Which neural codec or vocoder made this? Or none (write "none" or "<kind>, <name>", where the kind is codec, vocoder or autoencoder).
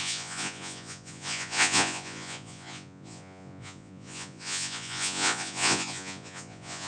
vocoder, Vocos